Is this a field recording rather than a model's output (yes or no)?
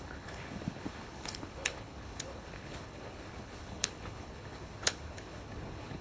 no